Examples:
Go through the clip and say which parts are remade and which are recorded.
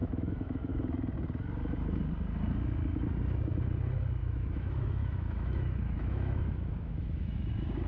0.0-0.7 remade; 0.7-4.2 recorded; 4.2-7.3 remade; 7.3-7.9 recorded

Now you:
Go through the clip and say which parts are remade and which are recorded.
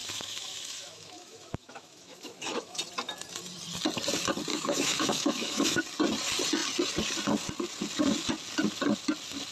0.0-2.8 remade; 2.8-4.5 recorded; 4.5-5.8 remade; 5.8-9.5 recorded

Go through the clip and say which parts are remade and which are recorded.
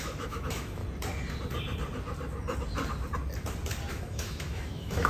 0.0-0.8 remade; 0.8-3.9 recorded; 3.9-5.1 remade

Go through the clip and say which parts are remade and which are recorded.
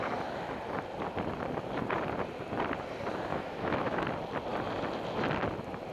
0.0-3.3 recorded; 3.3-4.0 remade; 4.0-5.9 recorded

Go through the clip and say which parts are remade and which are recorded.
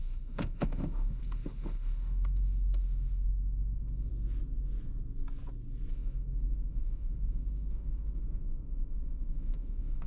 0.0-4.1 remade; 4.1-5.9 recorded; 5.9-10.1 remade